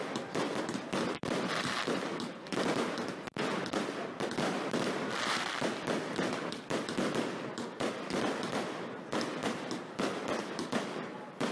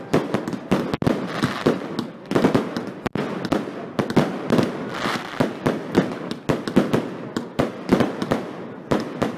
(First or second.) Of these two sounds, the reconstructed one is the first